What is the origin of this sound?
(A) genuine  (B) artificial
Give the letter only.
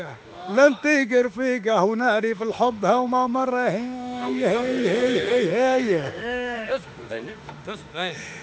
B